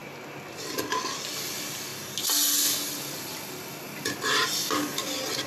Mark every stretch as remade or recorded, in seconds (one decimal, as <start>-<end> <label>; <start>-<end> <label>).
0.0-5.5 recorded